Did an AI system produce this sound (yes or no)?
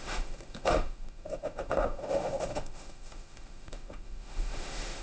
yes